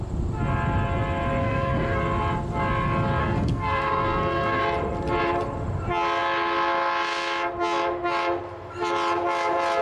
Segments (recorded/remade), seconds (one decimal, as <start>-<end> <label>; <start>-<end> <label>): 0.0-1.4 recorded; 1.4-2.0 remade; 2.0-3.2 recorded; 3.2-4.6 remade; 4.6-9.8 recorded